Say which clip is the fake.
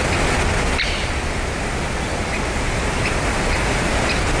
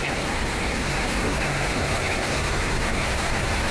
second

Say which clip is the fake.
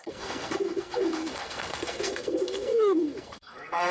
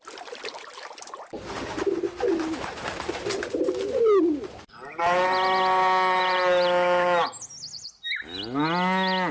first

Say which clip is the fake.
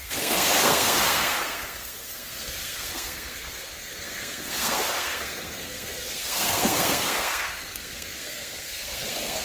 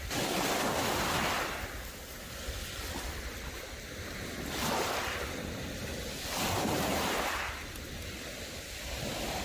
first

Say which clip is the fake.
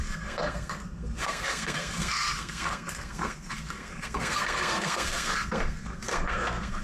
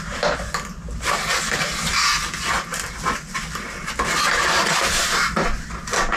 first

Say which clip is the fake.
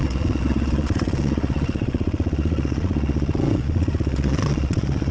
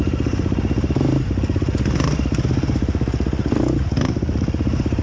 first